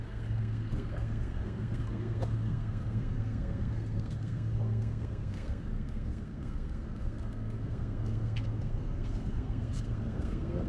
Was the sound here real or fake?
fake